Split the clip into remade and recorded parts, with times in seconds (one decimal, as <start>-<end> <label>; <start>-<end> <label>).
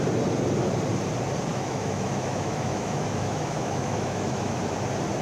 0.0-1.5 recorded; 1.5-4.6 remade; 4.6-5.2 recorded